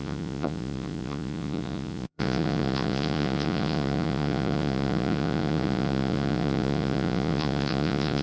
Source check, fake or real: fake